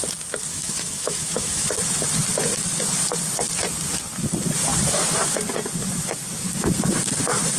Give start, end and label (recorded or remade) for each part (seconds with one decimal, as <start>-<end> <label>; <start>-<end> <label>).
0.0-0.5 recorded; 0.5-1.7 remade; 1.7-7.6 recorded